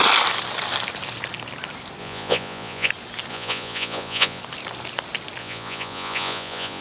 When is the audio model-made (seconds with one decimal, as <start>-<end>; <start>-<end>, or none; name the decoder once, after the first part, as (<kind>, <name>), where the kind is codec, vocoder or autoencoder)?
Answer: 2.0-2.9 (vocoder, Vocos); 3.3-4.4; 5.4-6.8